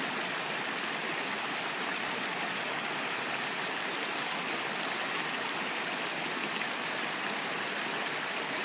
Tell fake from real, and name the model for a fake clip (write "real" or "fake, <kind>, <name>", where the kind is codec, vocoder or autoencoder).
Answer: real